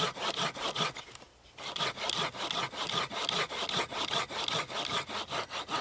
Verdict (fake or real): real